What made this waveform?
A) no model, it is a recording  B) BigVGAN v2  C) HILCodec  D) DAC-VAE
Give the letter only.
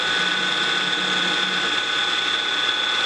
A